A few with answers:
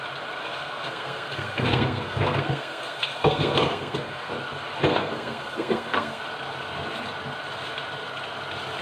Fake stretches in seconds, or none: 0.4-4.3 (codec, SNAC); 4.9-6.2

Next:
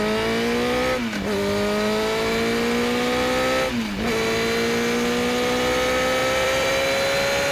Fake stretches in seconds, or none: 6.2-6.7 (vocoder, BigVGAN v2)

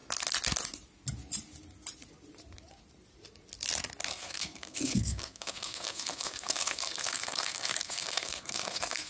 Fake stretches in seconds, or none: 4.1-9.1 (codec, SNAC)

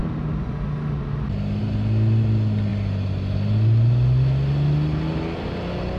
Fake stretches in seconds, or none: none

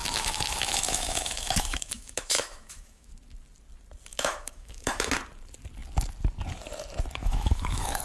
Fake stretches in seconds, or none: 0.0-3.1 (autoencoder, DAC-VAE); 4.1-5.1; 7.2-8.0